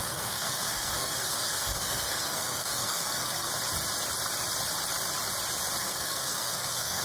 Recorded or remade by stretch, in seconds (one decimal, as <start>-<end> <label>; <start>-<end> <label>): 0.0-3.5 remade; 3.5-5.8 recorded; 5.8-7.0 remade